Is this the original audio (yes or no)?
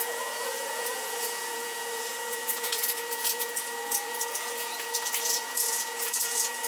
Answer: no